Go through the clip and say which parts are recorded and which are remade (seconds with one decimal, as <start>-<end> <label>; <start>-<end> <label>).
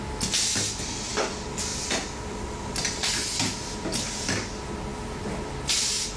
0.0-6.2 recorded